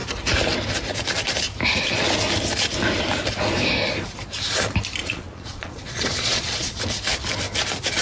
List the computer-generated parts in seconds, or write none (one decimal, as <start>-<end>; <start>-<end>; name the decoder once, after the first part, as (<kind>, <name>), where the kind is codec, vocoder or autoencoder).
5.0-6.8 (vocoder, Vocos)